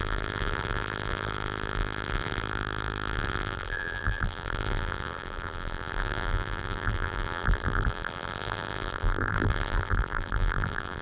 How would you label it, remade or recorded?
remade